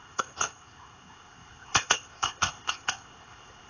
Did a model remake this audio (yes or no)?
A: yes